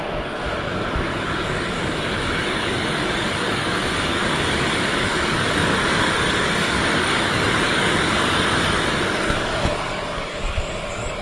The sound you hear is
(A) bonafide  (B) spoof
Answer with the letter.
B